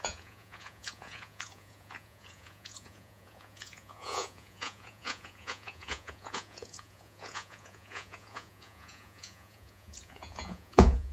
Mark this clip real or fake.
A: fake